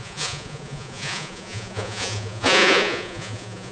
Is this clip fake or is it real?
fake